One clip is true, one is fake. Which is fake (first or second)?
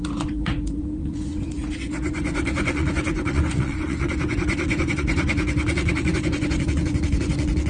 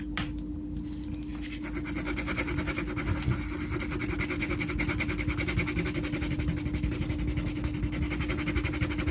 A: first